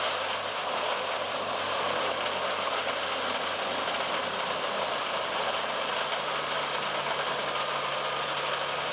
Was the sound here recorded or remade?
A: recorded